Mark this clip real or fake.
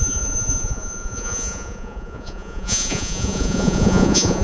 fake